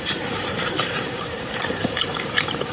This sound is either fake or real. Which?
fake